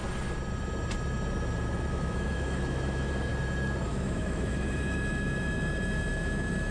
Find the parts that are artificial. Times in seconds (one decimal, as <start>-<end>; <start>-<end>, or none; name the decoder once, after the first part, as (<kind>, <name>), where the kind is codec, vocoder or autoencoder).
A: 1.9-3.3 (autoencoder, DAC-VAE); 3.9-6.7